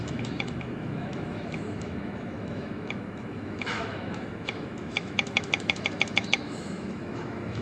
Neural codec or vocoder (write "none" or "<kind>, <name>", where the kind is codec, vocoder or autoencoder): autoencoder, DAC-VAE